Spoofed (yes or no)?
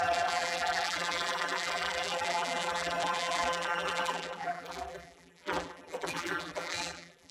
yes